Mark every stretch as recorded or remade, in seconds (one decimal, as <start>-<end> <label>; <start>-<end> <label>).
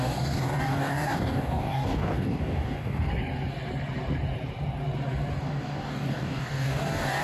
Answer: 0.0-3.1 remade; 3.1-5.4 recorded; 5.4-7.2 remade